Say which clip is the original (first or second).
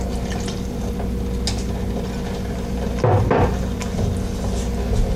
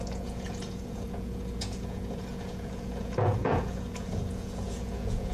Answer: first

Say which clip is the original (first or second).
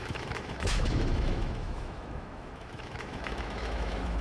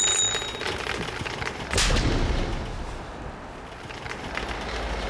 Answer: second